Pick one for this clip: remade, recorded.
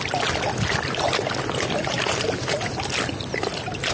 recorded